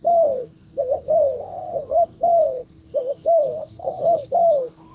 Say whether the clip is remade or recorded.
remade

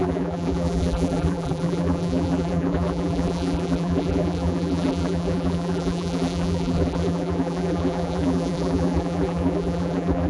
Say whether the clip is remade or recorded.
remade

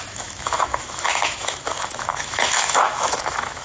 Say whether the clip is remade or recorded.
remade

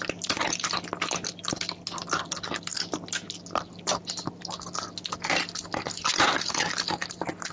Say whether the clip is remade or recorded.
recorded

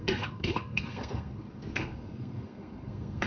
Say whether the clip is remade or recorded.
remade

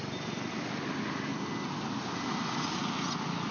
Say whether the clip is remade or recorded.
recorded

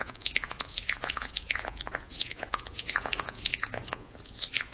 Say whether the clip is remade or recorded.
remade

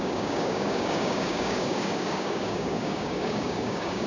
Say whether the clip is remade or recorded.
remade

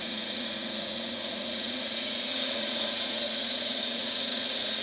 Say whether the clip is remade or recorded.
remade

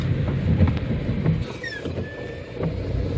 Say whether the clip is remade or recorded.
recorded